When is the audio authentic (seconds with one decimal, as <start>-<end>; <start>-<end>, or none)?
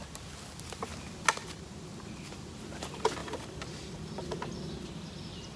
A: 0.0-3.2